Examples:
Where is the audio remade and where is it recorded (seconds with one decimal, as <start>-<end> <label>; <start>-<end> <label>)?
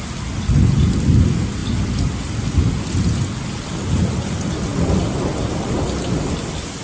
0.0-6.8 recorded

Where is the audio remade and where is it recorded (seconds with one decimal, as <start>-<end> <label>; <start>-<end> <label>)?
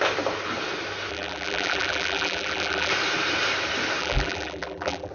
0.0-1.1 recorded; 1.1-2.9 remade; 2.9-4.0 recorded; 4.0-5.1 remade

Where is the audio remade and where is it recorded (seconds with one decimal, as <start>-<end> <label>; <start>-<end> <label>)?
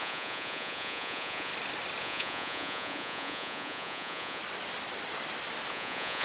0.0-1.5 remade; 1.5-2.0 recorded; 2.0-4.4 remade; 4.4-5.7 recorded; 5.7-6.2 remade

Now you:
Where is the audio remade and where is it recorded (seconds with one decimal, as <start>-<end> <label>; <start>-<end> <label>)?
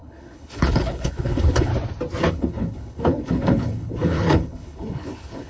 0.0-1.7 remade; 1.7-2.3 recorded; 2.3-5.5 remade